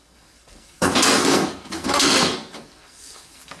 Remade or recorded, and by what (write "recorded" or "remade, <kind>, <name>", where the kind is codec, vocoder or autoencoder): remade, codec, SNAC